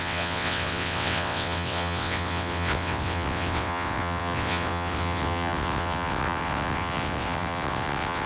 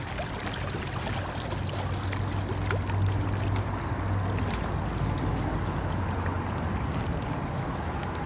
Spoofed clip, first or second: first